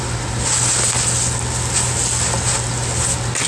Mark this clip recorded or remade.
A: recorded